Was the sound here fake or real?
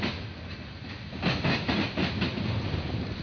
real